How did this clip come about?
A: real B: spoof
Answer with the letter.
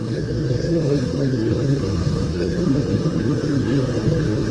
B